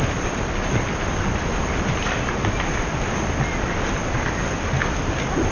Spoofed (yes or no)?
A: no